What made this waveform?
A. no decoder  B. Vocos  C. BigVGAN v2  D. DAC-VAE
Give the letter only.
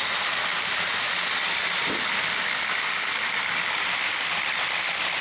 A